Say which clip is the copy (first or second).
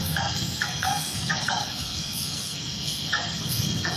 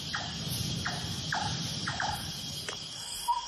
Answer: first